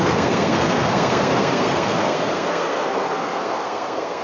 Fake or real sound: fake